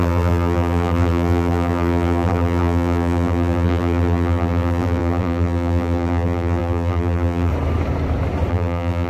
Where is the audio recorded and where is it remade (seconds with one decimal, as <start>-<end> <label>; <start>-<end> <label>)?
0.0-7.5 remade; 7.5-8.5 recorded; 8.5-9.1 remade